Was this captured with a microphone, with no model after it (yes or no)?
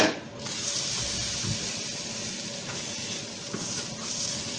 yes